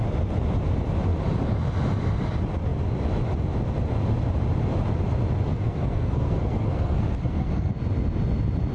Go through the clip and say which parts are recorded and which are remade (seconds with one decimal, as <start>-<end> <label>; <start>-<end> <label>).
0.0-5.5 recorded; 5.5-7.7 remade; 7.7-8.7 recorded